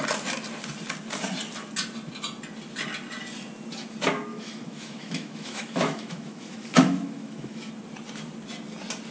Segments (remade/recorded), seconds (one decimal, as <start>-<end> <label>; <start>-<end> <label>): 0.0-4.3 recorded; 4.3-7.7 remade; 7.7-9.1 recorded

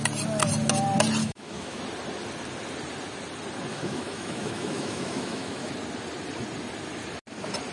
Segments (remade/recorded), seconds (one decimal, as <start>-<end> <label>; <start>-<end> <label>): 0.0-1.2 recorded; 1.2-1.8 remade; 1.8-3.7 recorded; 3.7-5.7 remade; 5.7-7.7 recorded

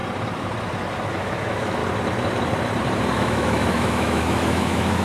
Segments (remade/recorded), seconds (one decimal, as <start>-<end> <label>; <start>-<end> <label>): 0.0-1.1 recorded; 1.1-1.8 remade; 1.8-3.1 recorded; 3.1-5.0 remade

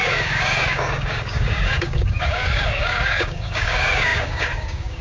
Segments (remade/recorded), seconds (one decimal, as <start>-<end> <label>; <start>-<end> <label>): 0.0-5.0 remade

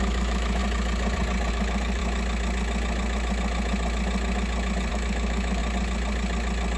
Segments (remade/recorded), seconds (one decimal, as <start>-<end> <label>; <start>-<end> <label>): 0.0-0.6 remade; 0.6-1.5 recorded; 1.5-2.0 remade; 2.0-4.9 recorded; 4.9-5.6 remade; 5.6-6.8 recorded

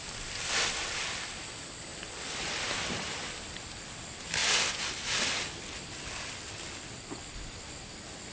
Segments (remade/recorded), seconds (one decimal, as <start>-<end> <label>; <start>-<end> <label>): 0.0-8.3 recorded

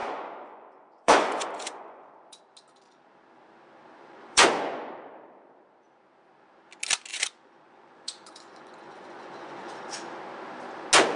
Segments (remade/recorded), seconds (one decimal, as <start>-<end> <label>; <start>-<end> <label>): 0.0-2.4 remade; 2.4-4.0 recorded; 4.0-4.9 remade; 4.9-7.1 recorded; 7.1-9.8 remade; 9.8-11.2 recorded